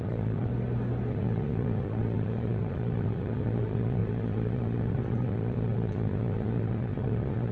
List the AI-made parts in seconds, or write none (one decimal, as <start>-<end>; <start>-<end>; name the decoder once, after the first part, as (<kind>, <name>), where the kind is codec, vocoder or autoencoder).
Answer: 0.0-0.5 (vocoder, Vocos); 1.1-7.5